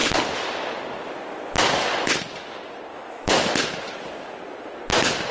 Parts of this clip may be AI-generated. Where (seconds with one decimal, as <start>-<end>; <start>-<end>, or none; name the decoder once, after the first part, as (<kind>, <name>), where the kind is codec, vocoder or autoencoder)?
2.9-3.5 (autoencoder, DAC-VAE)